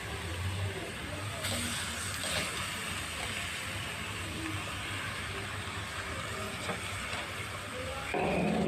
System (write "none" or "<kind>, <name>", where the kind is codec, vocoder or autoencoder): none